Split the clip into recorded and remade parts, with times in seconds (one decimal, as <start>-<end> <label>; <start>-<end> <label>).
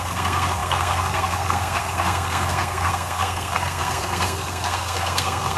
0.0-5.6 remade